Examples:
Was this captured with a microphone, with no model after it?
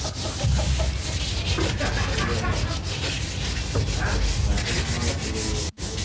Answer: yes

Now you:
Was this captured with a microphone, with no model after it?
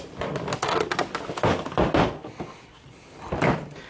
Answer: yes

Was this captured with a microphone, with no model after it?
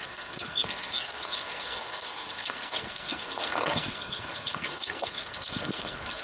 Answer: no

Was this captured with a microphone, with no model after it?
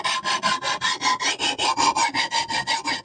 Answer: yes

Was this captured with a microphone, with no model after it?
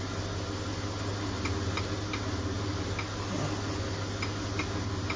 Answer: yes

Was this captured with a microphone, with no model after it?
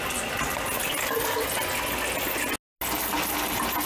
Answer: yes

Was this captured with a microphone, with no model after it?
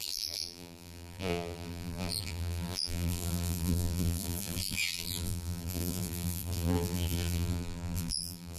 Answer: no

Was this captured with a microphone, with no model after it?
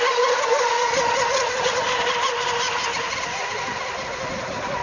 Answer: yes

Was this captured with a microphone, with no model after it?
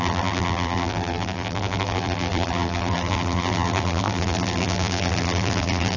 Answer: no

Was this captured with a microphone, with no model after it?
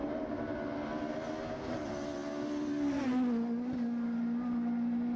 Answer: yes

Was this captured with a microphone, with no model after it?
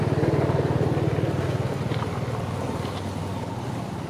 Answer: yes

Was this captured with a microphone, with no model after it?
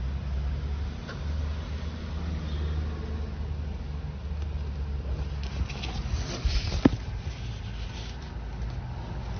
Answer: yes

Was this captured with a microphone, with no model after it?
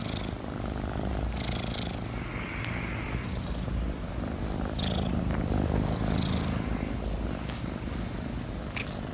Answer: yes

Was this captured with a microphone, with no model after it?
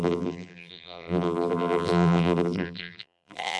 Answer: no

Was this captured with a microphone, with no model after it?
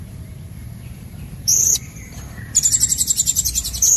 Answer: no